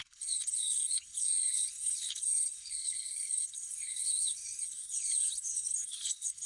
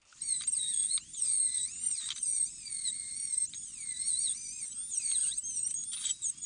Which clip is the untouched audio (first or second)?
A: second